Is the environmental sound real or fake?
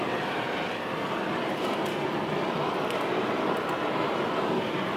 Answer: real